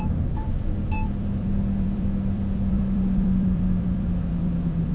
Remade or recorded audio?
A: remade